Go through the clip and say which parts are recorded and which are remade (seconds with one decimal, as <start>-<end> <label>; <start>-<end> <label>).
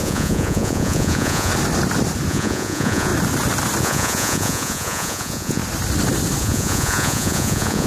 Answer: 0.0-1.5 remade; 1.5-2.3 recorded; 2.3-3.1 remade; 3.1-3.8 recorded; 3.8-5.6 remade; 5.6-6.4 recorded; 6.4-7.9 remade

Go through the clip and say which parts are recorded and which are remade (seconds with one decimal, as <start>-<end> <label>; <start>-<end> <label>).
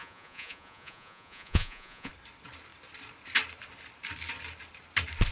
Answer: 0.0-2.1 remade; 2.1-5.3 recorded